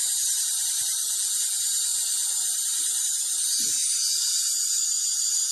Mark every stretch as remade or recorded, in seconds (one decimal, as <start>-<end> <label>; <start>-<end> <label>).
0.0-0.4 recorded; 0.4-1.1 remade; 1.1-1.9 recorded; 1.9-5.5 remade